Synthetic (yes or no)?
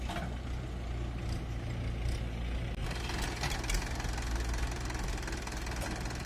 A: no